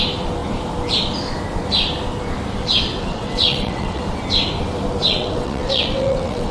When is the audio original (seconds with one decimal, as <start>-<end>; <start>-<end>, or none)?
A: 0.0-2.9; 4.0-5.0